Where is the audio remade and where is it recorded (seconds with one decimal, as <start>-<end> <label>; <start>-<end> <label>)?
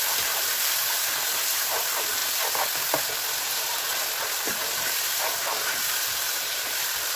0.0-2.2 remade; 2.2-3.5 recorded; 3.5-3.9 remade; 3.9-4.4 recorded; 4.4-7.2 remade